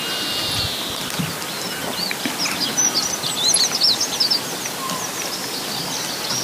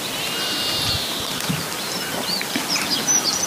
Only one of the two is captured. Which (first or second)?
first